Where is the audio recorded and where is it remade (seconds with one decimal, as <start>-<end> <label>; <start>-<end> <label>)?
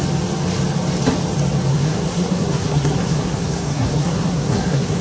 0.0-1.7 recorded; 1.7-5.0 remade